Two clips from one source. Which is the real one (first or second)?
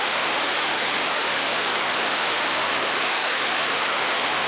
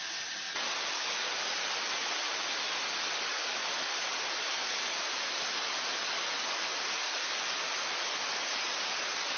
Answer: second